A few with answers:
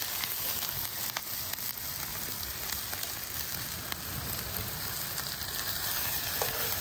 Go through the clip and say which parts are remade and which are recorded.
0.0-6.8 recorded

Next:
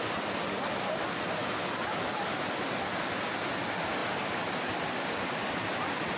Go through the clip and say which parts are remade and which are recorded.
0.0-1.4 remade; 1.4-2.8 recorded; 2.8-6.2 remade

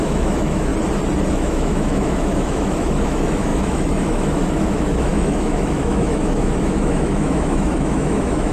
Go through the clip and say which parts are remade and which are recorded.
0.0-0.7 remade; 0.7-1.3 recorded; 1.3-8.5 remade

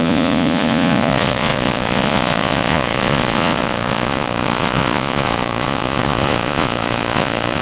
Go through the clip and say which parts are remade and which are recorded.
0.0-7.6 remade

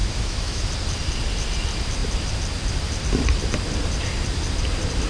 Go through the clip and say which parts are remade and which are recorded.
0.0-0.6 remade; 0.6-5.1 recorded

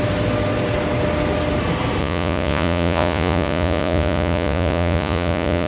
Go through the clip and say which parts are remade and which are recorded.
0.0-2.0 recorded; 2.0-5.7 remade

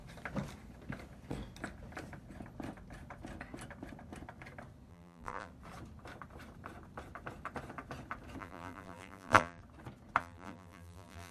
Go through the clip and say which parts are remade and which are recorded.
0.0-4.9 recorded; 4.9-5.5 remade; 5.5-8.4 recorded; 8.4-9.6 remade; 9.6-10.2 recorded; 10.2-11.3 remade

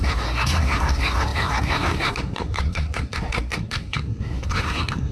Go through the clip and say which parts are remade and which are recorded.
0.0-5.1 remade